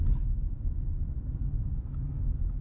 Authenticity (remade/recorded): recorded